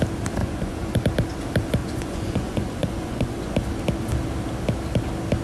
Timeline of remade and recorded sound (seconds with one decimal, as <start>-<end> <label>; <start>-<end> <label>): 0.0-0.4 recorded; 0.4-1.0 remade; 1.0-1.8 recorded; 1.8-3.5 remade; 3.5-5.4 recorded